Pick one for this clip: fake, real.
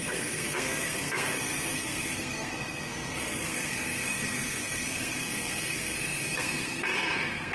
fake